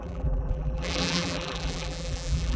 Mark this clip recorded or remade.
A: remade